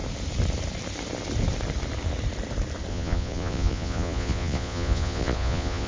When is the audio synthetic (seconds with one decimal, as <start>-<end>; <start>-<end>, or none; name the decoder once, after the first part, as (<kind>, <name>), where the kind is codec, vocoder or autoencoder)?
2.9-5.9 (vocoder, Vocos)